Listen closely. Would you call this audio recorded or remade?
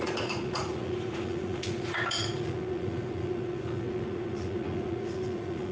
remade